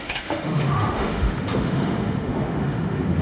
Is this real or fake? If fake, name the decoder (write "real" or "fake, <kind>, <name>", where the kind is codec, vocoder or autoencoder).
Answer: fake, autoencoder, DAC-VAE